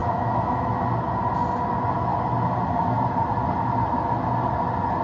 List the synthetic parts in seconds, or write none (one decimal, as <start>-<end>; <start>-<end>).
0.0-0.7